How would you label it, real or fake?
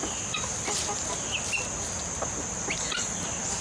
real